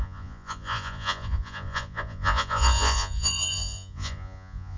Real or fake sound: fake